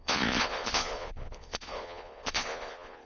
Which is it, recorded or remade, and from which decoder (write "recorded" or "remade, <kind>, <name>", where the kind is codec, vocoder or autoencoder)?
remade, vocoder, Vocos